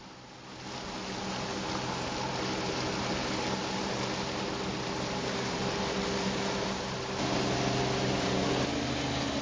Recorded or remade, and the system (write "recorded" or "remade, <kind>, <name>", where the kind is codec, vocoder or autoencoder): recorded